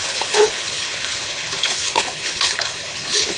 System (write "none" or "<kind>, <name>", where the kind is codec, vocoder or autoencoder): codec, HILCodec